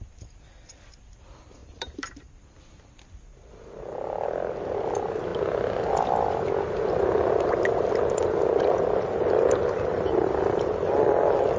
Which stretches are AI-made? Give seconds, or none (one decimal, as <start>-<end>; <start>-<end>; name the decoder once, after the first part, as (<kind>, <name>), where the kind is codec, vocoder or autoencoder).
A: 1.6-2.6 (vocoder, BigVGAN v2)